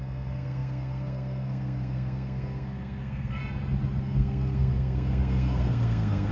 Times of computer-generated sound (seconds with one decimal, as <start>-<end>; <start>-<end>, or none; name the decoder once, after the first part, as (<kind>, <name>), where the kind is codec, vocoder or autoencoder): 0.0-3.4 (codec, SNAC); 4.0-6.3